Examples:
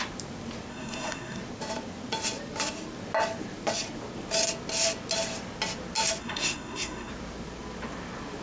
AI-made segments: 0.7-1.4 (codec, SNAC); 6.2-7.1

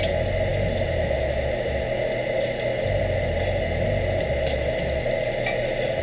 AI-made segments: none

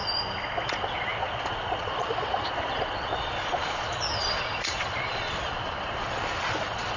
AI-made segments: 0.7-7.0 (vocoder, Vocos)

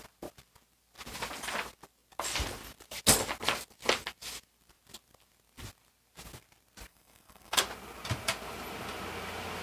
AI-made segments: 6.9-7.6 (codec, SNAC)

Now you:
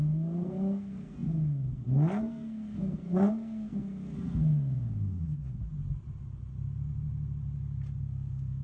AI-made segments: 0.0-5.6 (codec, SNAC); 8.0-8.6